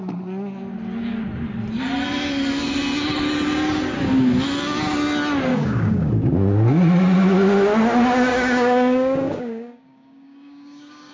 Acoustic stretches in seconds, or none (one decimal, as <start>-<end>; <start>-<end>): 0.0-5.5; 6.1-8.3